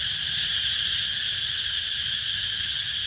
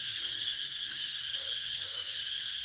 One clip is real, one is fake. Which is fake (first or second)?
second